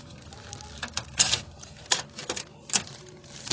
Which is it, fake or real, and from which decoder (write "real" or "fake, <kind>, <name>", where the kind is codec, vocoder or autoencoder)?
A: real